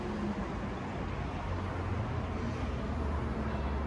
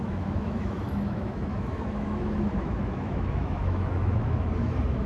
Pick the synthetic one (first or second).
second